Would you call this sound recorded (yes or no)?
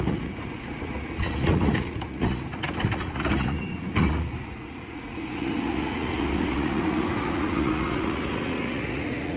no